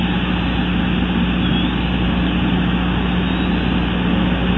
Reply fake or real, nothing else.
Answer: real